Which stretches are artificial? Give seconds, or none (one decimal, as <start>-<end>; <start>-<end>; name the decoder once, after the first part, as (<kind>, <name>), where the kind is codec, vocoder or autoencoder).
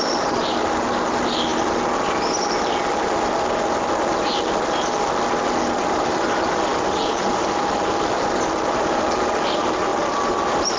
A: none